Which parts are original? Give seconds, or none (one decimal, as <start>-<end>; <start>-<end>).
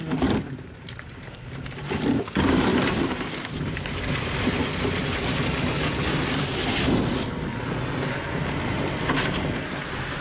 4.6-9.7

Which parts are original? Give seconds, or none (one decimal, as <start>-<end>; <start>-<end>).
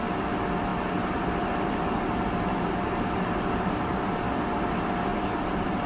0.0-5.1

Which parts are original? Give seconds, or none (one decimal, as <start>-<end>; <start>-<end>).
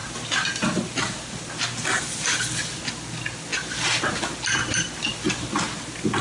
1.1-6.2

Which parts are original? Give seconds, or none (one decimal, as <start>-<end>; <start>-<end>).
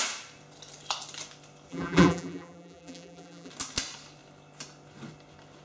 0.0-1.7; 3.5-5.6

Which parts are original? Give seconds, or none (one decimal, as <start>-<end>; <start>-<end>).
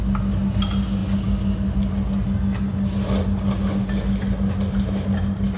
0.0-5.6